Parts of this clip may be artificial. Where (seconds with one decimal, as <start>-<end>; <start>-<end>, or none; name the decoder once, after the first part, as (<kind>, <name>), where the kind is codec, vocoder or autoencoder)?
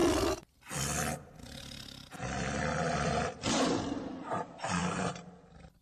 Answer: none